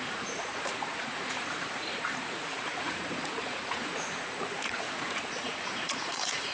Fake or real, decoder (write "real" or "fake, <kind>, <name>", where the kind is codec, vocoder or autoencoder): fake, vocoder, Vocos